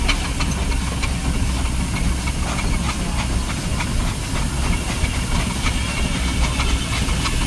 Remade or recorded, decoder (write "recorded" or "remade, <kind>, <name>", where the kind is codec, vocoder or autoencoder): recorded